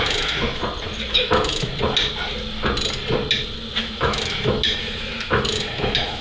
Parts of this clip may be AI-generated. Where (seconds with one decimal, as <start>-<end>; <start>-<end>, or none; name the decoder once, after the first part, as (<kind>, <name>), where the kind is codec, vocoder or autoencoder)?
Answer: 0.0-0.6 (autoencoder, DAC-VAE); 1.1-1.7; 3.8-6.2